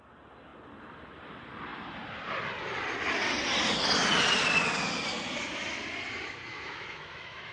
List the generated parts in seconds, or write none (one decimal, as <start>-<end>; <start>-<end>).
6.5-7.5